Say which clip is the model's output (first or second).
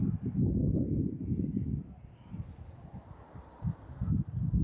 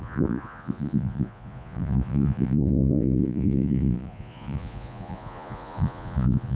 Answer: second